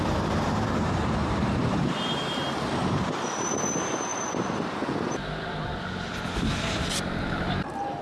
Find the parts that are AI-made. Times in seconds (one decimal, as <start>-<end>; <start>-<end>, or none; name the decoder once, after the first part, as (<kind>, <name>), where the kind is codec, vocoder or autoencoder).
0.0-4.1 (vocoder, BigVGAN v2); 7.2-8.0